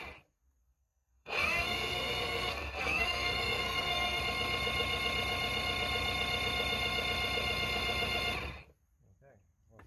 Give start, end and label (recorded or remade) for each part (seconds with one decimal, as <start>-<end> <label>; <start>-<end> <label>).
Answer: 0.0-0.6 recorded; 0.6-4.2 remade; 4.2-9.9 recorded